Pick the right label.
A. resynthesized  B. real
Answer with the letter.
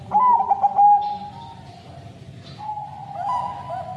B